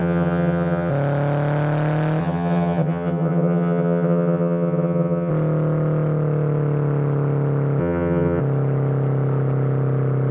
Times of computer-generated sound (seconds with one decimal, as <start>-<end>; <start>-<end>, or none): 0.0-0.9; 2.2-5.3; 7.8-8.4